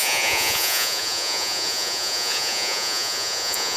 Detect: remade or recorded remade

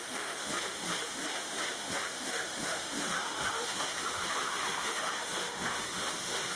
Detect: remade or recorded remade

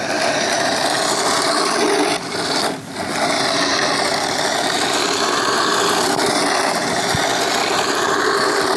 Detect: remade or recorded recorded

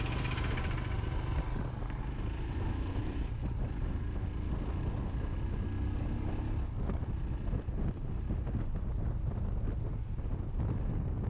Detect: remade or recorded recorded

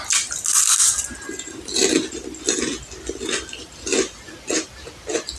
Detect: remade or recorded recorded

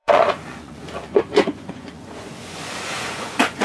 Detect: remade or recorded remade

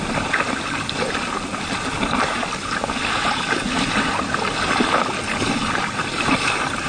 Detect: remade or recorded recorded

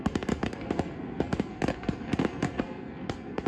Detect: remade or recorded remade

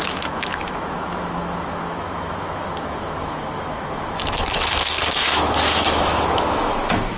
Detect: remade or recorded remade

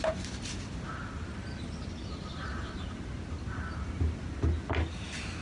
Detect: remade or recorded recorded